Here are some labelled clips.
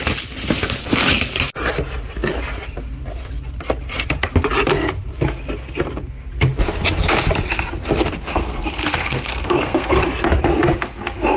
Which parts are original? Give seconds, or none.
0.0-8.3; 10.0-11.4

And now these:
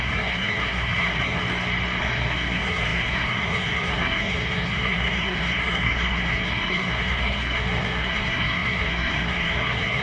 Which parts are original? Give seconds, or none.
1.4-2.0

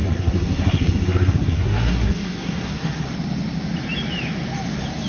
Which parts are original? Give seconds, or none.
3.1-5.1

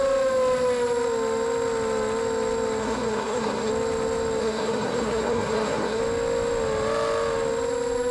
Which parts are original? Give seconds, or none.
0.0-2.8; 3.7-4.4; 6.0-8.1